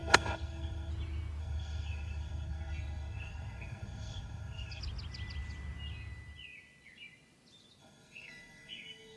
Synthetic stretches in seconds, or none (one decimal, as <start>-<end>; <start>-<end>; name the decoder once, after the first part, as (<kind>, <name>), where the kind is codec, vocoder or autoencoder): 0.0-0.9 (codec, SNAC); 1.4-4.8; 7.8-9.2